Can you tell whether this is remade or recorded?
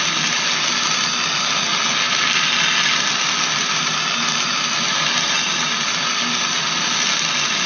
recorded